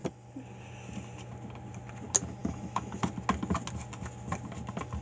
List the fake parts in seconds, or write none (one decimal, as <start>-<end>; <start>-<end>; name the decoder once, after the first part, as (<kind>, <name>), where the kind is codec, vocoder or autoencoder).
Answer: 2.4-3.0 (autoencoder, DAC-VAE)